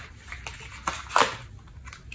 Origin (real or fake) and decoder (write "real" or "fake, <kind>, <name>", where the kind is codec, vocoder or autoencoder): real